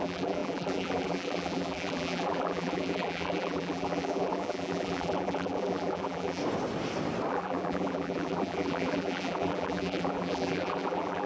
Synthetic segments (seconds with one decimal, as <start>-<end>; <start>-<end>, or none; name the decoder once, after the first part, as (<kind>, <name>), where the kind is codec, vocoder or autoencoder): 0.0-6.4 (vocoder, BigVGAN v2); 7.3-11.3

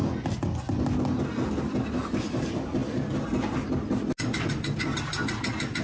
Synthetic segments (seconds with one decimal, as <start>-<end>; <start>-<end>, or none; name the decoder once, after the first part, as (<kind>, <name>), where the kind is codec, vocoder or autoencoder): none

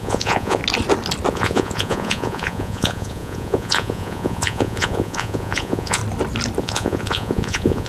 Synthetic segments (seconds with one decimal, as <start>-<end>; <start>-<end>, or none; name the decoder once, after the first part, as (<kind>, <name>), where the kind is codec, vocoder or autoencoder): 0.0-0.6 (vocoder, Vocos); 1.3-6.0; 6.6-7.9

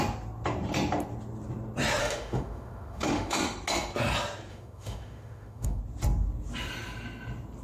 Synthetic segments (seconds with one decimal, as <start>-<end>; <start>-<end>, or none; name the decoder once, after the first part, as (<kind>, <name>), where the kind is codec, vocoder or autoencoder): 2.0-3.4 (autoencoder, DAC-VAE); 4.5-5.8